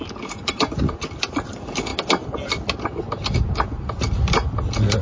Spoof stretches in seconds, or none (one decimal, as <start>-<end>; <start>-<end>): none